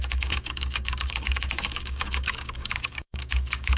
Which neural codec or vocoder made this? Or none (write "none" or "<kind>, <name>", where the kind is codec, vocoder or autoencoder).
codec, DAC